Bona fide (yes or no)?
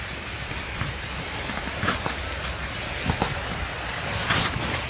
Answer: yes